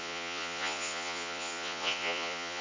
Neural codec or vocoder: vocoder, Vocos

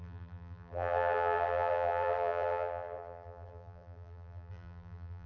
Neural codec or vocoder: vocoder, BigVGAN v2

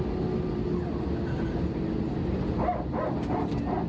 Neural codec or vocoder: none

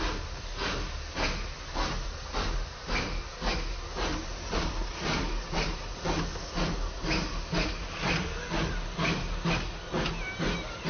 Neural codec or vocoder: none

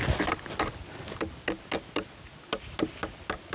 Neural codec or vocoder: none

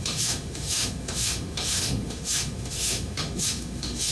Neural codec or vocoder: autoencoder, DAC-VAE